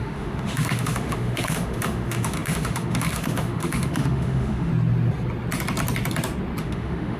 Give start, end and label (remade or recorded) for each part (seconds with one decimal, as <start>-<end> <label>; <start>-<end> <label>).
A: 0.0-4.7 remade; 4.7-6.6 recorded; 6.6-7.2 remade